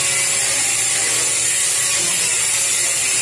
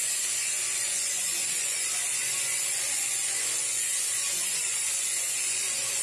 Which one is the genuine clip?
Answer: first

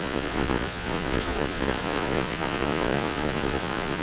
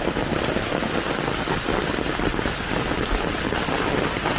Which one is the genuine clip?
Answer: second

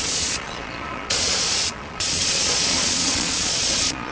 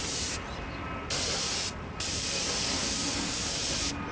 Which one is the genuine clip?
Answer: second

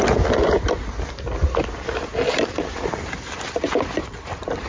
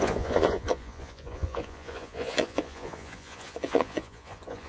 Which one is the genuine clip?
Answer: first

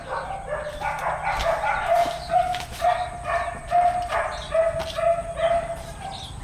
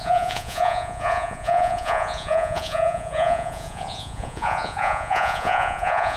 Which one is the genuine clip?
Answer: first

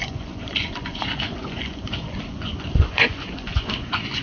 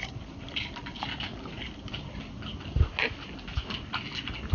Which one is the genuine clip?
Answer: second